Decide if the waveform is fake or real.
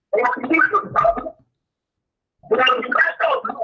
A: real